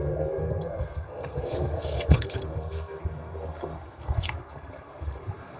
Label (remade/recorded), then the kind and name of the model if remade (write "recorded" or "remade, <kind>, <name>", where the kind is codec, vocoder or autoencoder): remade, codec, SNAC